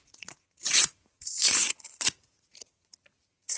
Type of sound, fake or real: fake